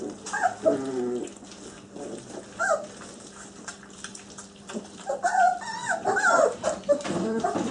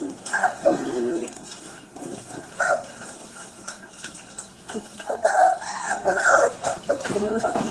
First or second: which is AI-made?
second